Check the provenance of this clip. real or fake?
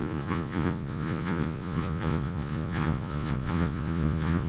fake